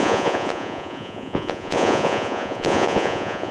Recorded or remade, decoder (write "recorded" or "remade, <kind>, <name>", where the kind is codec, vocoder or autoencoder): remade, vocoder, Vocos